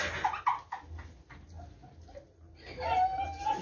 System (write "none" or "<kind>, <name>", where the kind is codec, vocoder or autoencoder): none